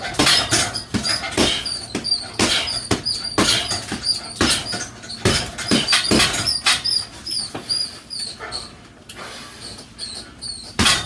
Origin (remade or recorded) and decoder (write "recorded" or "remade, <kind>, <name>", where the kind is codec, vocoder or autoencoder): recorded